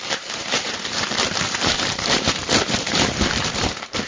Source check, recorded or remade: remade